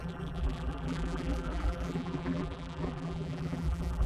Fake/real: fake